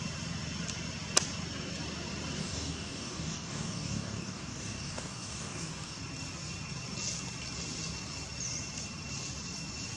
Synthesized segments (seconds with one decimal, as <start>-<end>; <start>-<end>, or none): 2.4-6.0